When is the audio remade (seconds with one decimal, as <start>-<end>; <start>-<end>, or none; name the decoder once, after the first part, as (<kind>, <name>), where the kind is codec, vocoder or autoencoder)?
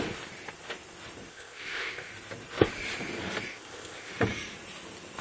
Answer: 1.3-2.1 (codec, ZipCodec); 3.5-4.1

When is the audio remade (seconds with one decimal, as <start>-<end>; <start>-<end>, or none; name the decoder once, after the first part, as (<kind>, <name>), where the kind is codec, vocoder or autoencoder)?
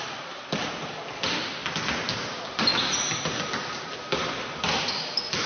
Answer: none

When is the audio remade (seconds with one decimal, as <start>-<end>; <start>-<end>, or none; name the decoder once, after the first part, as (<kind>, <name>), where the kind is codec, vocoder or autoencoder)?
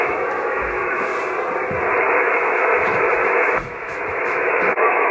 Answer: 0.0-1.1 (autoencoder, DAC-VAE); 2.2-5.1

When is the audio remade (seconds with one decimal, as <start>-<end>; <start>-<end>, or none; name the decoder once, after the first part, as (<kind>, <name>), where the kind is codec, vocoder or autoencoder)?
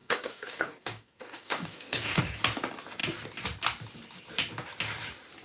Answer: 0.0-2.2 (codec, DAC)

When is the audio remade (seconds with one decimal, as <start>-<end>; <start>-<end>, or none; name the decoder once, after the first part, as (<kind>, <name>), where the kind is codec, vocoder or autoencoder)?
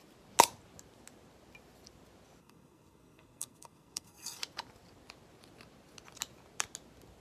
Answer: 2.4-4.4 (codec, SNAC)